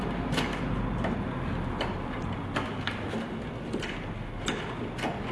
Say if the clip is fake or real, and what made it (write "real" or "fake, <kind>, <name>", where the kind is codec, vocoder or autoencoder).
real